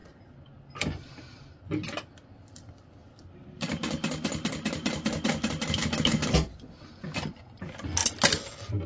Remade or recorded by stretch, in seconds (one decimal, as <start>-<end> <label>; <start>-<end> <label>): 0.0-8.9 recorded